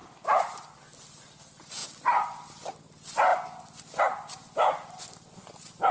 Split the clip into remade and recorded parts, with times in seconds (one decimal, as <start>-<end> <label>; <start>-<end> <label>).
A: 0.0-0.8 remade; 0.8-5.9 recorded

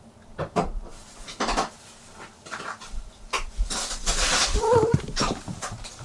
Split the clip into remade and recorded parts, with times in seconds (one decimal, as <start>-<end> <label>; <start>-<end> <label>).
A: 0.0-0.9 remade; 0.9-4.5 recorded; 4.5-6.0 remade

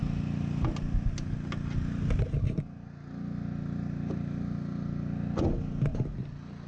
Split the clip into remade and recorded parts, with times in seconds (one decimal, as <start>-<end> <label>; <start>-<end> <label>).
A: 0.0-5.9 recorded; 5.9-6.7 remade

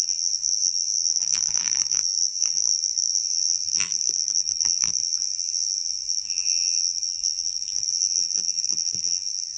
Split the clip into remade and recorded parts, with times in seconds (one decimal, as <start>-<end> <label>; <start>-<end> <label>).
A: 0.0-9.6 remade

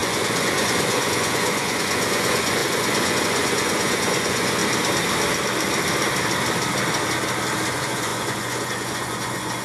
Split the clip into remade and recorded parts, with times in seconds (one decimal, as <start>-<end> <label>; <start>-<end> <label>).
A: 0.0-4.6 remade; 4.6-7.7 recorded; 7.7-9.6 remade

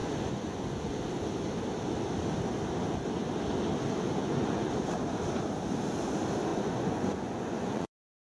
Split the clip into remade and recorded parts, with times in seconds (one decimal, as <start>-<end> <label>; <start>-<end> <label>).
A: 0.0-0.9 remade; 0.9-4.2 recorded; 4.2-4.7 remade; 4.7-6.5 recorded; 6.5-8.3 remade

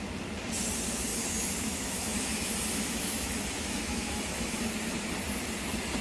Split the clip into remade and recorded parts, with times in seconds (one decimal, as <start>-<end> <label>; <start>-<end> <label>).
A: 0.0-1.1 recorded; 1.1-4.7 remade; 4.7-6.0 recorded